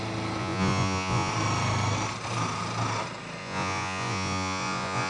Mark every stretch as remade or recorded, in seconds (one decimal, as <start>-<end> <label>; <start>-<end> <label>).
0.0-0.4 recorded; 0.4-1.3 remade; 1.3-3.4 recorded; 3.4-5.1 remade